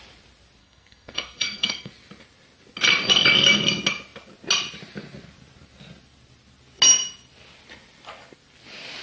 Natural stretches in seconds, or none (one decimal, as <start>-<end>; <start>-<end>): 0.0-0.6; 1.9-9.0